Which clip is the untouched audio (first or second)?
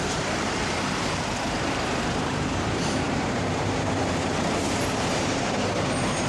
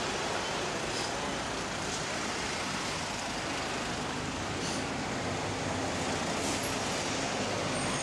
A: second